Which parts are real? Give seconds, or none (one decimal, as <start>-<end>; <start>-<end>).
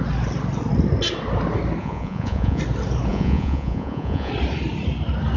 0.0-1.8; 2.6-3.1; 4.3-5.4